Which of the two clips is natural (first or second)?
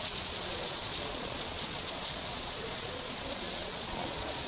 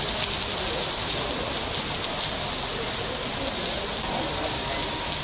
second